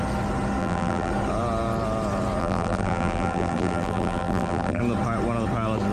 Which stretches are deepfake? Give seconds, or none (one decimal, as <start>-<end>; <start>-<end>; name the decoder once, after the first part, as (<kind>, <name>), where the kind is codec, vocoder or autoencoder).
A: 0.6-1.1 (vocoder, BigVGAN v2); 2.4-4.8